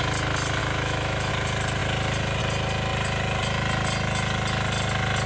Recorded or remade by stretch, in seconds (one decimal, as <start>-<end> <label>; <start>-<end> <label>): 0.0-0.6 recorded; 0.6-1.3 remade; 1.3-5.3 recorded